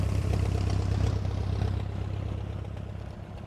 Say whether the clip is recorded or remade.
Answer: recorded